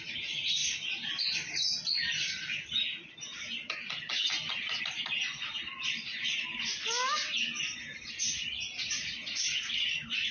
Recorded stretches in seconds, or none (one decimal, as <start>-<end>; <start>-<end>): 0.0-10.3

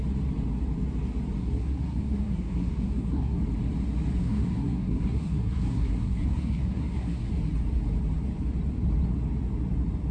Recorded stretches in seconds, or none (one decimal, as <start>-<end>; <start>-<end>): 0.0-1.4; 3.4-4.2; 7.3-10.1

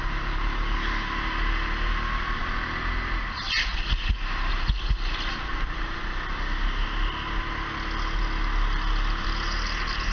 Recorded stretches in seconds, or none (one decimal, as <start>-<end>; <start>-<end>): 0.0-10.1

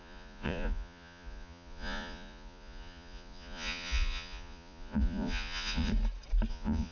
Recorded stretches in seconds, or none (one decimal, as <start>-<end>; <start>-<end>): 5.9-6.5